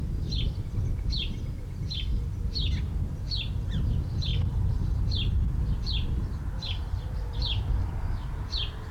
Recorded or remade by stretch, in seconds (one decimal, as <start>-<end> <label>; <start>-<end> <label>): 0.0-8.9 recorded